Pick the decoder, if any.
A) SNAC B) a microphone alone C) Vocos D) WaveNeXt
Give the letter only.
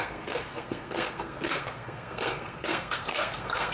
A